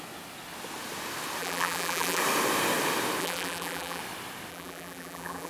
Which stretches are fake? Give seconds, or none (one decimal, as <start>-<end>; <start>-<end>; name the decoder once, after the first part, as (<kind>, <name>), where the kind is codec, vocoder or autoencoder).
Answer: 1.4-2.2 (vocoder, BigVGAN v2); 3.2-4.0; 4.5-5.5